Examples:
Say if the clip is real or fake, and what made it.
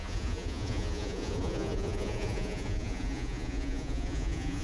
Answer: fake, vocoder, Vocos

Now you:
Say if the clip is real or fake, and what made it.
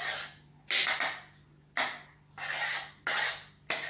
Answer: real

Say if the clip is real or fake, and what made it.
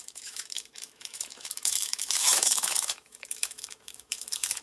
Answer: fake, autoencoder, DAC-VAE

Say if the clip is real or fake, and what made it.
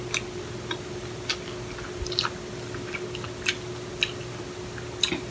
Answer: real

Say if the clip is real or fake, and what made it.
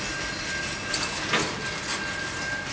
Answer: real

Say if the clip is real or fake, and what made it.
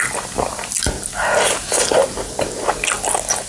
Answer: real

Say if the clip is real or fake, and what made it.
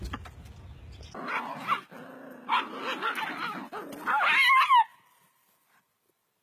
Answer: real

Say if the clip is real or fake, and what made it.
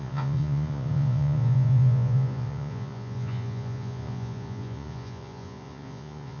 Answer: fake, vocoder, Vocos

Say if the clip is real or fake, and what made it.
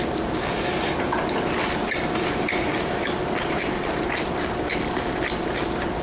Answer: real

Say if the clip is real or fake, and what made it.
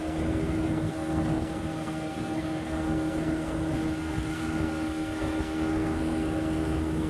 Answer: fake, codec, SNAC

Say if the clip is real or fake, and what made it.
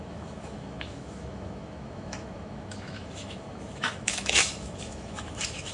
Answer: fake, autoencoder, DAC-VAE